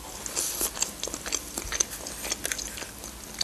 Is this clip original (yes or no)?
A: yes